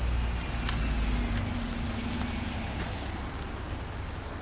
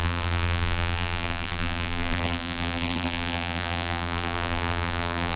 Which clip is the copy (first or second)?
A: second